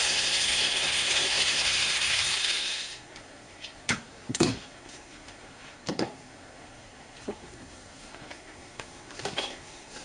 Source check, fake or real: fake